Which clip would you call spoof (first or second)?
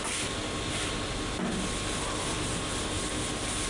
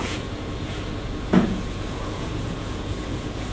second